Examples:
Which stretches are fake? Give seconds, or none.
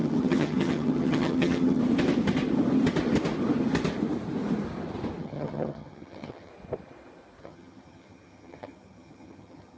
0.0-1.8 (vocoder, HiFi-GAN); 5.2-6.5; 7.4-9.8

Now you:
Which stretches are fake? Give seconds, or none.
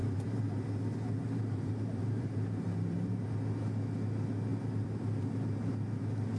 0.0-3.3 (vocoder, BigVGAN v2); 4.5-6.0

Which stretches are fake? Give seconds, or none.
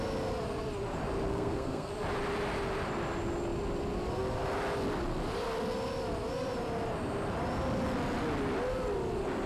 1.3-1.9 (codec, SNAC)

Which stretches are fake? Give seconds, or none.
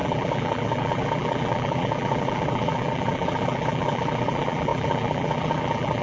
0.0-6.0 (vocoder, BigVGAN v2)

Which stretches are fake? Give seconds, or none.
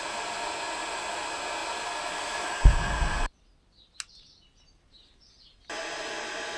none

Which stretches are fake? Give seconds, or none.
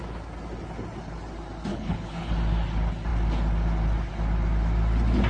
1.7-2.3 (codec, HILCodec)